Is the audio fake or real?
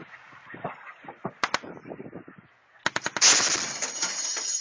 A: real